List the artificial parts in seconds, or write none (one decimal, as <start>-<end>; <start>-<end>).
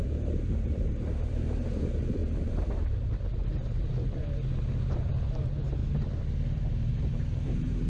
0.0-5.8; 6.9-7.9